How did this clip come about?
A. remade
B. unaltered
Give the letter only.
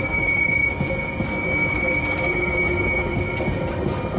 B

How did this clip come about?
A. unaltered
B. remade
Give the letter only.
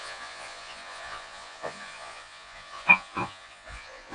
B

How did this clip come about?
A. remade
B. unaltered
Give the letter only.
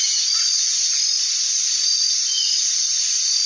B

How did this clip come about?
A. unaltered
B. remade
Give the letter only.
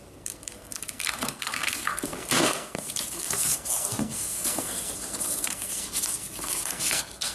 B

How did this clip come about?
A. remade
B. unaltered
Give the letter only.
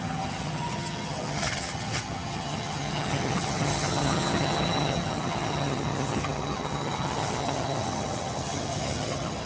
A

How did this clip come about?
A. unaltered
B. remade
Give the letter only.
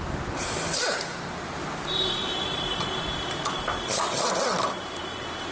A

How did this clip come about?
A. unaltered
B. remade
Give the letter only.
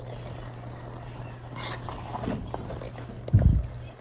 A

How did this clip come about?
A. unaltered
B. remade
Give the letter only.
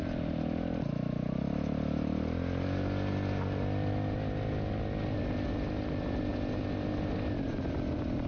A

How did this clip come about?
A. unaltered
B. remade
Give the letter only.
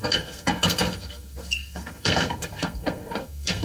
B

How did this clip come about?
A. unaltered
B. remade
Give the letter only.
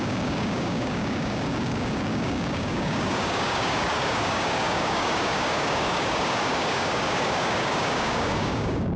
B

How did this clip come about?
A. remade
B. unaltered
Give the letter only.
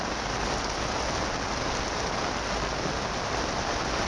B